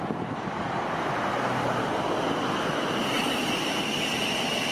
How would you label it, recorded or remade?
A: recorded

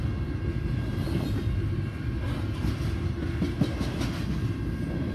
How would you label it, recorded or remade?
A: recorded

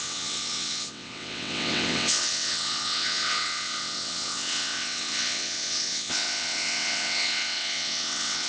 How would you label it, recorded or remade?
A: remade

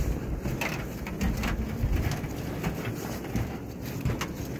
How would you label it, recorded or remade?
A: recorded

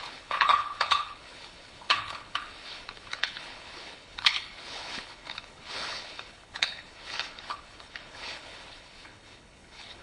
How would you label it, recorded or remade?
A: remade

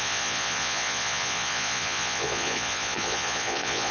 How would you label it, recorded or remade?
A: remade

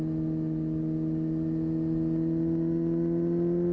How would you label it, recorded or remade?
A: recorded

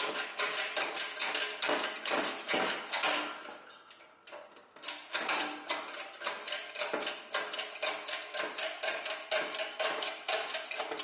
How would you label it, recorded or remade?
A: recorded